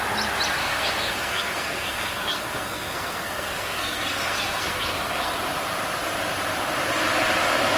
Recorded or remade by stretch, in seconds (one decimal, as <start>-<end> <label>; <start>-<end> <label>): 0.0-0.6 recorded; 0.6-5.3 remade; 5.3-7.8 recorded